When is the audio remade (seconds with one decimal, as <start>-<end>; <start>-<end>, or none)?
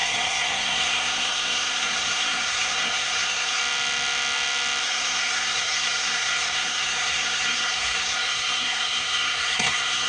0.0-3.6; 4.8-10.1